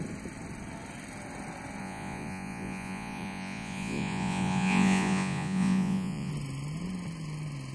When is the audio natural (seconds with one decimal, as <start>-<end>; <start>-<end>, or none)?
0.0-1.8; 6.3-7.7